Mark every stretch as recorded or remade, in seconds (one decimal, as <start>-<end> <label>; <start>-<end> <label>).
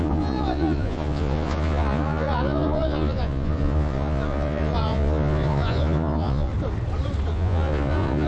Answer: 0.0-6.5 remade; 6.5-7.3 recorded; 7.3-8.3 remade